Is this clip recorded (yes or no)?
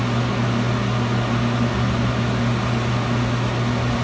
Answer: yes